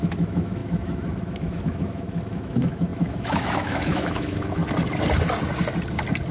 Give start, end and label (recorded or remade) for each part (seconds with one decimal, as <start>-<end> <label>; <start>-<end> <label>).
0.0-4.6 remade; 4.6-6.3 recorded